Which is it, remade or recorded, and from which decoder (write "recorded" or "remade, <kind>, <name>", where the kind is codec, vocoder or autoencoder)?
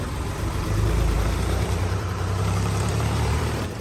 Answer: remade, vocoder, BigVGAN v2